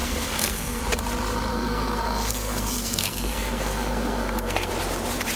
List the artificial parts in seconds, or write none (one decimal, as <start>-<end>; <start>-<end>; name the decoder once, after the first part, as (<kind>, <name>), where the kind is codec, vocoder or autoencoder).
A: 0.0-0.8 (codec, SNAC); 1.5-4.7